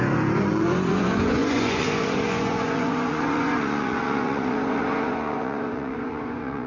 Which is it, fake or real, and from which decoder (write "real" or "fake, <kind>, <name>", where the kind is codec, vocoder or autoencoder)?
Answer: fake, vocoder, Vocos